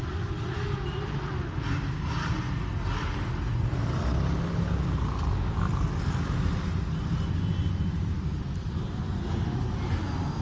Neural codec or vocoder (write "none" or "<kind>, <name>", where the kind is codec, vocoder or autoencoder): none